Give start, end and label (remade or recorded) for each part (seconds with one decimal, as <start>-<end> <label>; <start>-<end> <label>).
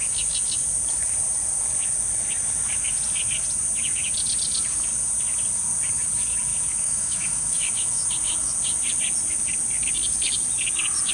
0.0-6.5 recorded; 6.5-8.1 remade; 8.1-11.1 recorded